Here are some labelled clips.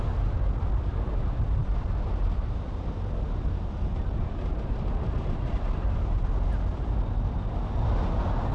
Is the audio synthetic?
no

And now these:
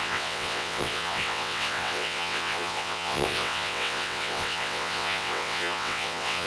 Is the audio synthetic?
yes